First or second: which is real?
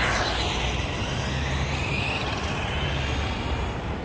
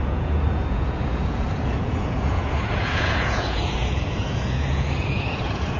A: first